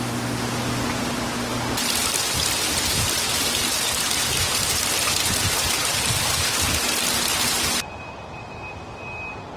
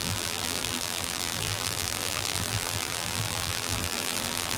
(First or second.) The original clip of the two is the first